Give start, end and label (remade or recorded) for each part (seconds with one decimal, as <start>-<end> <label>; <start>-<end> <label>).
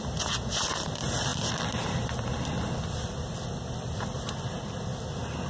0.0-5.5 recorded